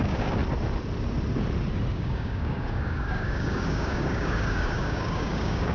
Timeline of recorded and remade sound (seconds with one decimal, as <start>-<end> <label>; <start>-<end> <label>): 0.0-0.4 remade; 0.4-1.9 recorded; 1.9-5.7 remade